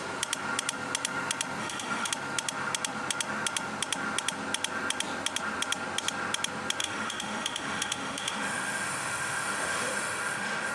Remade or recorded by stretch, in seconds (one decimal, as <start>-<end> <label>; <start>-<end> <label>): 0.0-1.6 recorded; 1.6-2.1 remade; 2.1-6.8 recorded; 6.8-10.7 remade